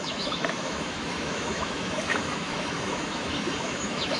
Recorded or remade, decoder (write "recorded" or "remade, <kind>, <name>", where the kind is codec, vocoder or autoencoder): remade, autoencoder, DAC-VAE